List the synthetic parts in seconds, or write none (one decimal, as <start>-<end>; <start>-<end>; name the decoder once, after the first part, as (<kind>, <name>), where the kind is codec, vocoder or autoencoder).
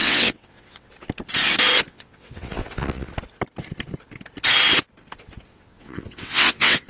0.0-0.9 (vocoder, WaveNeXt); 1.9-3.1; 5.5-6.9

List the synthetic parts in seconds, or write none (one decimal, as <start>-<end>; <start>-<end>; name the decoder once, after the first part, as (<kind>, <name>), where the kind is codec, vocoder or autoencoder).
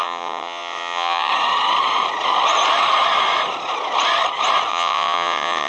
0.0-1.3 (vocoder, WaveNeXt); 4.7-5.7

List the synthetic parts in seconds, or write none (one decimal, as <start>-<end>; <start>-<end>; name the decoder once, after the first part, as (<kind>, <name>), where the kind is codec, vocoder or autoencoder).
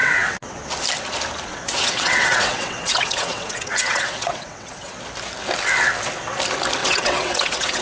0.0-0.6 (vocoder, WaveNeXt); 1.5-4.9; 6.8-7.8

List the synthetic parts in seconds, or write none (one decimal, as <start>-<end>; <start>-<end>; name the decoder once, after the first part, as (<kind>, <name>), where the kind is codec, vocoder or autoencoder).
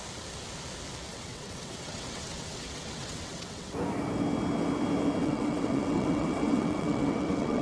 1.1-3.7 (vocoder, WaveNeXt); 5.2-7.6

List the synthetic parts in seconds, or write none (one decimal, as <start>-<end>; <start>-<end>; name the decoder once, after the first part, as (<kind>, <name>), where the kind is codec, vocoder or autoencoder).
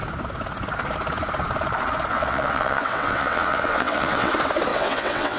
2.1-4.3 (vocoder, WaveNeXt); 4.7-5.4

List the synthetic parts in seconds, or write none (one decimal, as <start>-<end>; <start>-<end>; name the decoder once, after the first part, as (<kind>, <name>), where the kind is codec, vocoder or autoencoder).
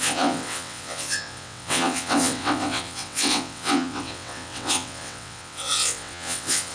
0.0-6.7 (vocoder, WaveNeXt)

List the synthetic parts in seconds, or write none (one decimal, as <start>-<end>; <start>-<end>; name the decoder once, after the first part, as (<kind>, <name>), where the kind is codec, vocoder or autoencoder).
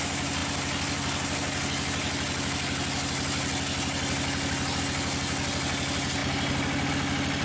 none